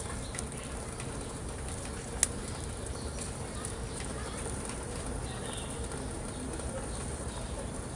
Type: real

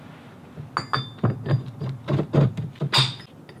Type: real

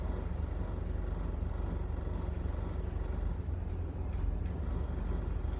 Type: real